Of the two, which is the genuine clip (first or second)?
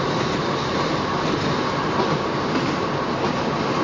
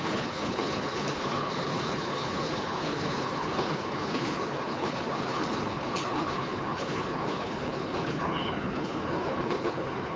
first